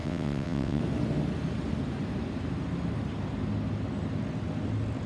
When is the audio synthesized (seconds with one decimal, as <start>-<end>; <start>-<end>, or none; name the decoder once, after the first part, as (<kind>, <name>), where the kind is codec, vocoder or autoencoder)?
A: 0.0-0.8 (vocoder, WaveNeXt)